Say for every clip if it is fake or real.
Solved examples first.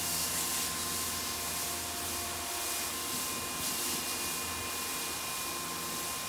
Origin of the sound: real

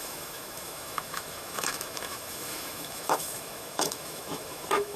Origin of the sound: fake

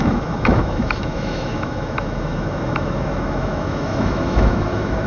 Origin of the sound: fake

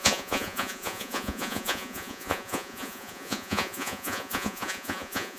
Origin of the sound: fake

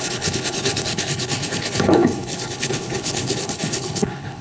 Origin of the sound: fake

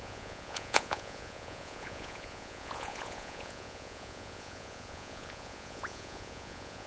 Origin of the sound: fake